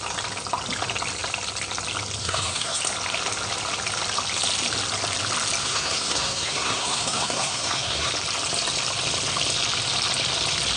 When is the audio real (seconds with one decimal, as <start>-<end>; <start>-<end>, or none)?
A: 0.0-2.2; 2.8-5.6; 8.1-10.8

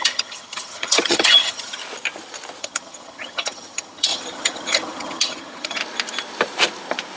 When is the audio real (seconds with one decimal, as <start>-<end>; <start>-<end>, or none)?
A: 1.8-2.6; 5.8-7.2